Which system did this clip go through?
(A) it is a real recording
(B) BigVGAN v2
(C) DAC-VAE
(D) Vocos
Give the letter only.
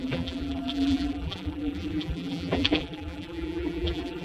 B